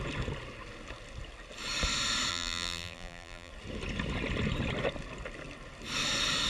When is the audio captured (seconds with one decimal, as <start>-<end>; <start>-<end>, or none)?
0.0-2.3; 3.5-6.5